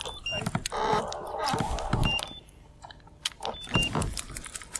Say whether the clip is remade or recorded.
recorded